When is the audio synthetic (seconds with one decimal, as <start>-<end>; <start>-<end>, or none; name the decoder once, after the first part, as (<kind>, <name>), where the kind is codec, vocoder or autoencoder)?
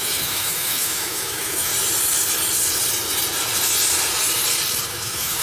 0.0-1.7 (autoencoder, DAC-VAE); 4.9-5.4